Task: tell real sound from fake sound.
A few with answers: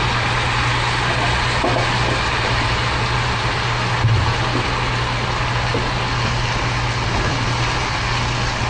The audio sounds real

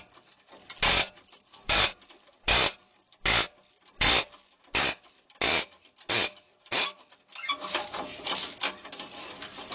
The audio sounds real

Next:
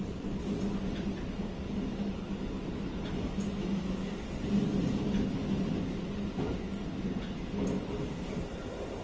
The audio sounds real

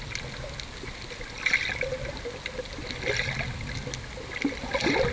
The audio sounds real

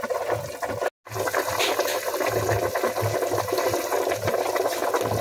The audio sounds real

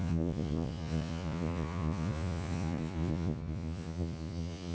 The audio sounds fake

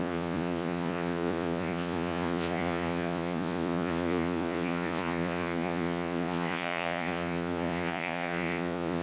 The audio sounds fake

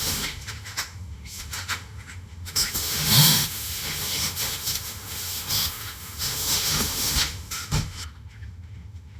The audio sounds fake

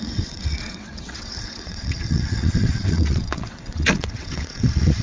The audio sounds fake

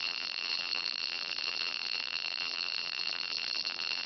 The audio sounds fake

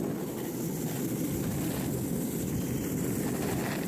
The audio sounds real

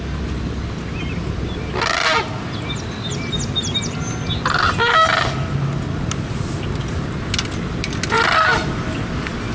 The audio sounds real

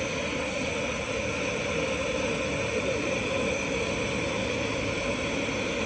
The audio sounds real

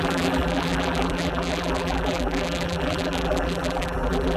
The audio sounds fake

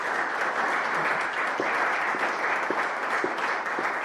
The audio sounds real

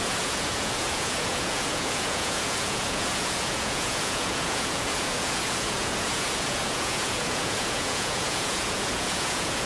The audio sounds fake